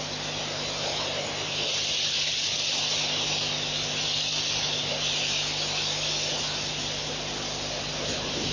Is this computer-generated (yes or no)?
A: no